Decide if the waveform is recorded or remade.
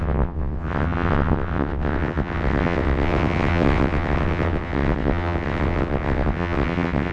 remade